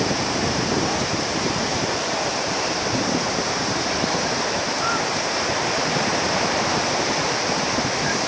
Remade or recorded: remade